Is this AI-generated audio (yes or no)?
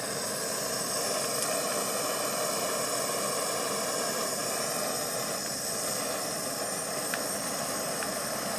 no